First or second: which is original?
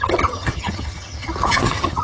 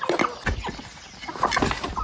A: second